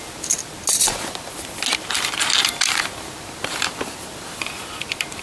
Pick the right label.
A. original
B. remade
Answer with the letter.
A